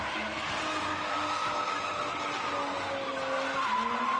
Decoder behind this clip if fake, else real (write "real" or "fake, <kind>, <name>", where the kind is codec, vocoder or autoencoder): real